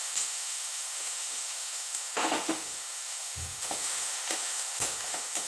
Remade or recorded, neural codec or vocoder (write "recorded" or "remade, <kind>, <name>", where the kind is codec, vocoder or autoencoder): remade, autoencoder, DAC-VAE